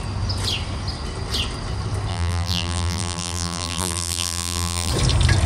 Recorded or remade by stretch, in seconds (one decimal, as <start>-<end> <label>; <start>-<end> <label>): 0.0-2.1 recorded; 2.1-4.9 remade; 4.9-5.5 recorded